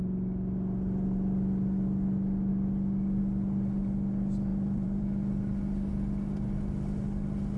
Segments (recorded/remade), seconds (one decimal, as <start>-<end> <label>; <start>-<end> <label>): 0.0-4.5 recorded; 4.5-5.0 remade; 5.0-7.6 recorded